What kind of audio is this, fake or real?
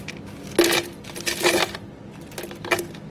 real